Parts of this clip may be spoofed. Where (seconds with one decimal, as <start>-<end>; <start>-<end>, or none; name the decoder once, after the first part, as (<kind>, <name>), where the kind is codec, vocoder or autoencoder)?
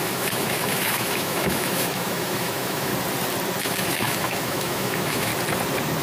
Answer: 0.0-2.9 (autoencoder, DAC-VAE); 3.6-5.3